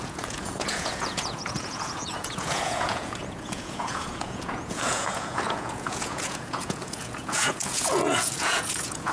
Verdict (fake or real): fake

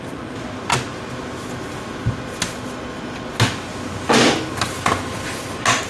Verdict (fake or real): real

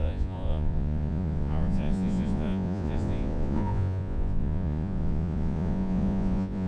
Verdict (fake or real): fake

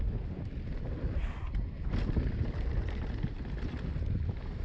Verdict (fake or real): real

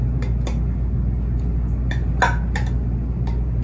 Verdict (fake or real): real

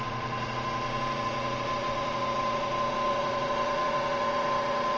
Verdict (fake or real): fake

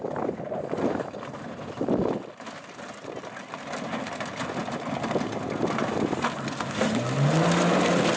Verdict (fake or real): real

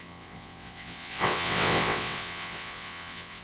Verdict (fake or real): fake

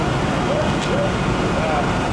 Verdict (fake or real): real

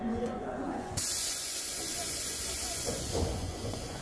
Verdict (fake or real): fake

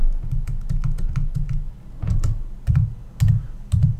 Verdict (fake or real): real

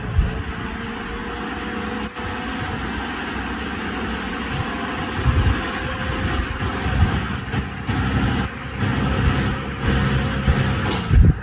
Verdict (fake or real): real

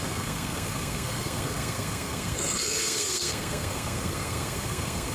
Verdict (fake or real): fake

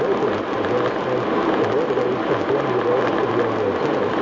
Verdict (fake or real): real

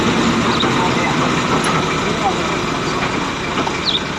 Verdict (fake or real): real